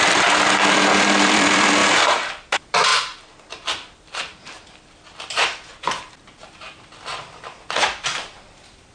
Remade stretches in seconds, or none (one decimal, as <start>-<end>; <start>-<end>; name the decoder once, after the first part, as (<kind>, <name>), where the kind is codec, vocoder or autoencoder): 0.0-1.8 (vocoder, BigVGAN v2); 2.3-8.9

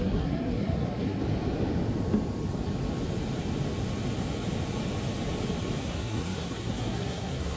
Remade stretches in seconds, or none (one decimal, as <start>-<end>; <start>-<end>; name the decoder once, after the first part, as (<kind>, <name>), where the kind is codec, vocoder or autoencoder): 0.0-1.2 (codec, SNAC); 5.8-7.6